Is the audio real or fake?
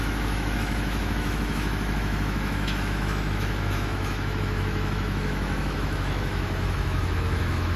fake